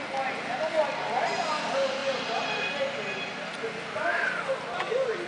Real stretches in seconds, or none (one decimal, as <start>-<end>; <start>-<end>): 0.0-2.0; 2.7-5.3